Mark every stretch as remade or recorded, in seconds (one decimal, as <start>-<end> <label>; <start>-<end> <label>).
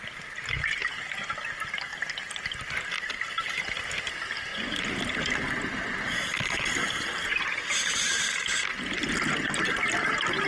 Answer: 0.0-1.9 recorded; 1.9-4.0 remade; 4.0-4.5 recorded; 4.5-5.3 remade; 5.3-10.5 recorded